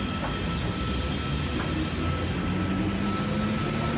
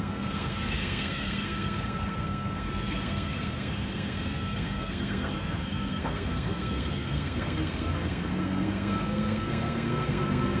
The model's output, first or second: second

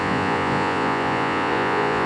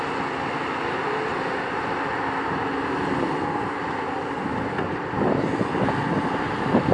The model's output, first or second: first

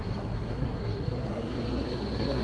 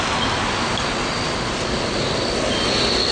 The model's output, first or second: first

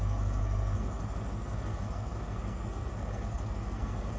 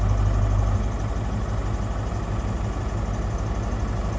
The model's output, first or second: first